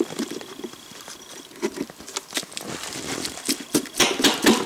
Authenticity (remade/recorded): recorded